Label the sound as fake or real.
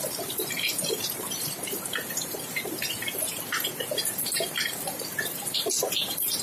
fake